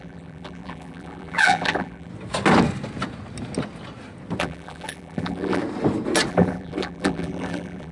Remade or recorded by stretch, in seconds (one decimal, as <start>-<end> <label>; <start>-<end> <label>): 0.0-2.1 remade; 2.1-4.4 recorded; 4.4-5.6 remade; 5.6-6.3 recorded; 6.3-7.9 remade